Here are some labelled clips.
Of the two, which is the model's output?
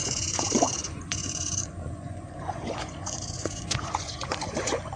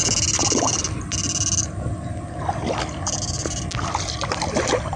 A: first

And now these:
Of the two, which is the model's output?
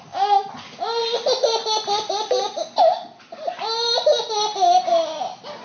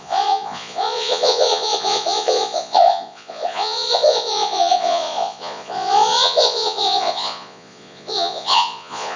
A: second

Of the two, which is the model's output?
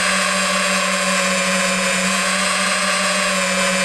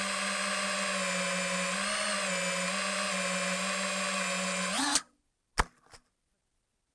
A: first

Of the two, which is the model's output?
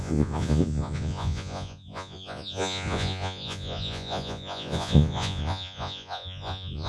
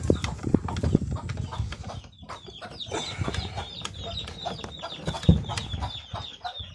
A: first